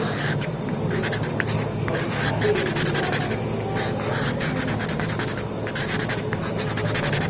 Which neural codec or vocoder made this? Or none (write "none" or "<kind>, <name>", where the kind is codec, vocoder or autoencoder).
none